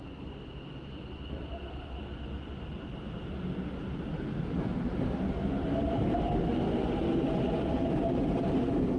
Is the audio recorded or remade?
recorded